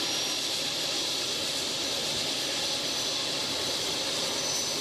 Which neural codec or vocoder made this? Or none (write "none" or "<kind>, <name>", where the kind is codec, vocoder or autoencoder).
none